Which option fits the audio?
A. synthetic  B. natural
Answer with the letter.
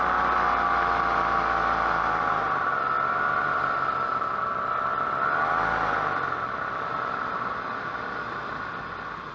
B